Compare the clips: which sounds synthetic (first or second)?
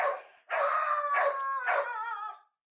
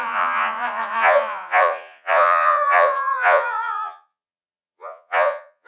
second